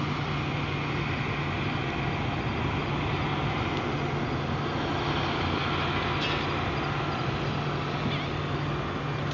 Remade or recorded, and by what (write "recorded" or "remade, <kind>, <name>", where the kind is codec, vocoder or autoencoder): recorded